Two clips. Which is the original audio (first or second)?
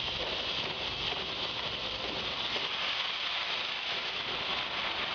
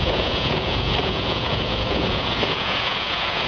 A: first